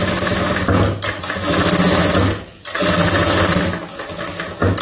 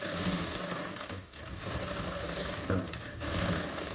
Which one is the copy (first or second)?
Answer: second